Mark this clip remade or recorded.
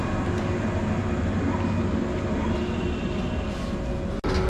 recorded